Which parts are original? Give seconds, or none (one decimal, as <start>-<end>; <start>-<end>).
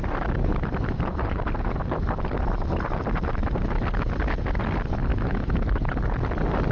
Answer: 0.0-5.1; 5.9-6.7